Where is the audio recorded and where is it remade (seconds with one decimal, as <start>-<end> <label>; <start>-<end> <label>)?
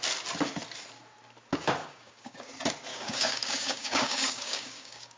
0.0-1.8 recorded; 1.8-2.5 remade; 2.5-2.9 recorded; 2.9-5.2 remade